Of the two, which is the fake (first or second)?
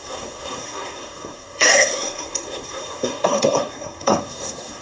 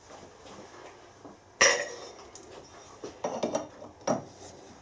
first